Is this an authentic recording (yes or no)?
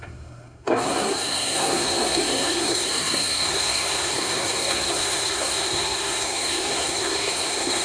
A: no